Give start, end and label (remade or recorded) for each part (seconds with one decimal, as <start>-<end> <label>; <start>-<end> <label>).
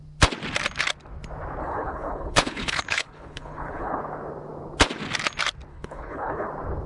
0.0-1.6 recorded; 1.6-4.0 remade; 4.0-5.7 recorded; 5.7-6.5 remade; 6.5-6.9 recorded